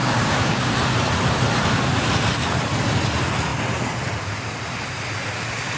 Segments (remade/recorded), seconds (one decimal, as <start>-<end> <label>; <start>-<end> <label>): 0.0-0.7 remade; 0.7-5.8 recorded